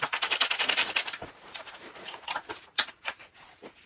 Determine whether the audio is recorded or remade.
remade